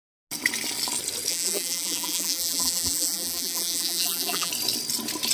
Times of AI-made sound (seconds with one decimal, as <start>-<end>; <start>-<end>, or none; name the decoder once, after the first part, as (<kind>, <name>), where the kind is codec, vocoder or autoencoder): 1.3-4.5 (vocoder, BigVGAN v2)